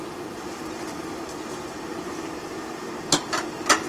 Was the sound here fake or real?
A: fake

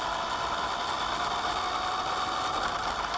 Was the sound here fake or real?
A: real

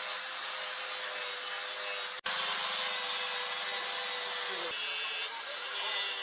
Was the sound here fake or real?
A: real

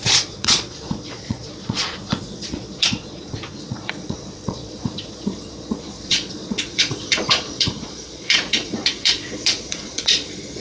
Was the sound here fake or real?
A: fake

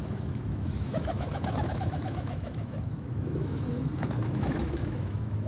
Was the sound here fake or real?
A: fake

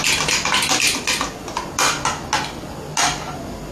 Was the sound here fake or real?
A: real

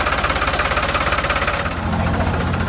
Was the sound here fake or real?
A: real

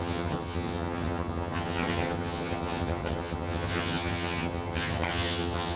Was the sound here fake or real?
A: fake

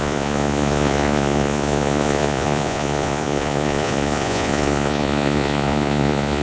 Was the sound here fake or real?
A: fake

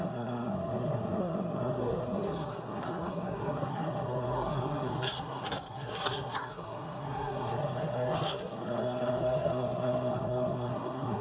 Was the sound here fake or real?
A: fake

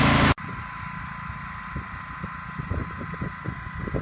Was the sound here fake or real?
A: real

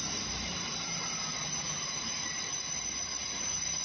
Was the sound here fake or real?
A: real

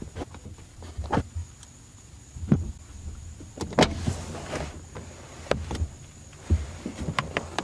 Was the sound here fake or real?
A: real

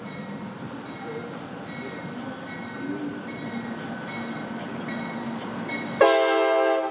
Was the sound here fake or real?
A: real